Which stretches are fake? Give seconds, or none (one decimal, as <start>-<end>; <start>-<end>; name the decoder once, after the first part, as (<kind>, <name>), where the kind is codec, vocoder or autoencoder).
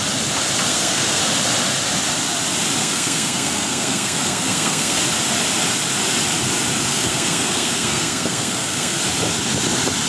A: 0.7-1.2 (codec, SNAC); 2.8-5.0; 6.9-9.0